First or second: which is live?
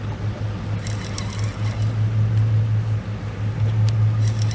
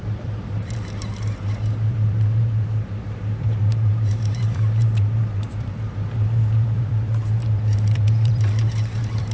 first